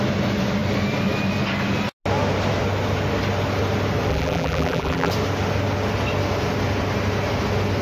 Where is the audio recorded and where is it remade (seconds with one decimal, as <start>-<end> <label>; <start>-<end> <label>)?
0.0-4.1 recorded; 4.1-5.1 remade; 5.1-7.8 recorded

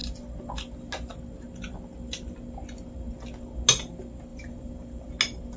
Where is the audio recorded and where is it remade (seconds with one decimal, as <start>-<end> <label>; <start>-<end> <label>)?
0.0-4.3 recorded; 4.3-5.1 remade; 5.1-5.6 recorded

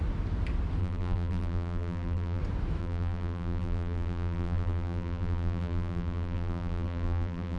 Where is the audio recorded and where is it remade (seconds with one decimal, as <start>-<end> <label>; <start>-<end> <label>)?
0.0-0.8 recorded; 0.8-2.4 remade; 2.4-2.8 recorded; 2.8-7.6 remade

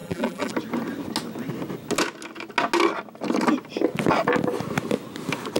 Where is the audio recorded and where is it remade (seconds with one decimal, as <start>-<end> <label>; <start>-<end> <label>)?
0.0-0.5 remade; 0.5-5.6 recorded